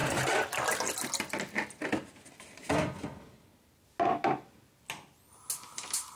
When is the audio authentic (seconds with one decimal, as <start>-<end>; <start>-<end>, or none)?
0.0-6.2